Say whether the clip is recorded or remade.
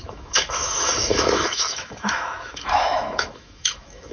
remade